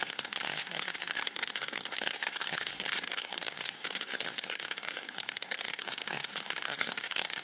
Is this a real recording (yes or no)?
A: no